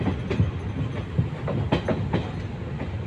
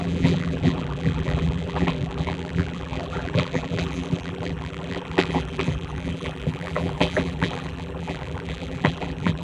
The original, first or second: first